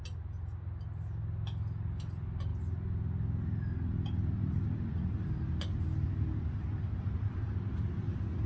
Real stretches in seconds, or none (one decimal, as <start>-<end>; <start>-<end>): 0.0-8.5